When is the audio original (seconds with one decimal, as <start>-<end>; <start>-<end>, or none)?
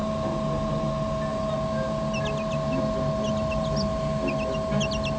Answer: 0.0-5.2